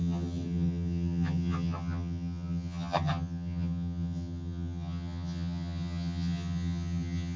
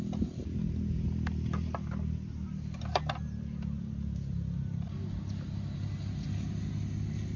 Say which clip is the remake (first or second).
first